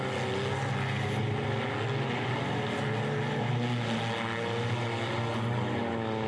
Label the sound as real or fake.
real